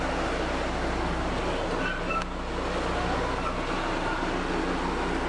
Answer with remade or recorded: recorded